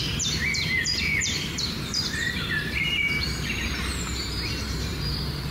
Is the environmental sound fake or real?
fake